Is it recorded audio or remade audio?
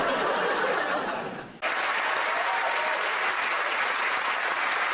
recorded